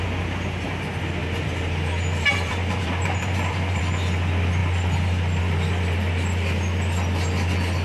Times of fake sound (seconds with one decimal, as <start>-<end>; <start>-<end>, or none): 1.2-3.8

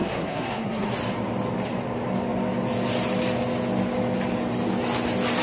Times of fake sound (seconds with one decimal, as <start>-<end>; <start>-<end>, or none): 0.0-0.9